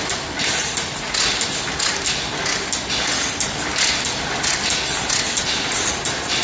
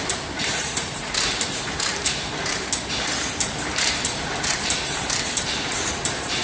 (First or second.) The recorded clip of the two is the first